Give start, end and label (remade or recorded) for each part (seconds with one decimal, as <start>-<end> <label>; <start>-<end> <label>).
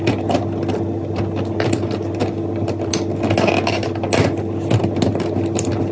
0.0-5.9 recorded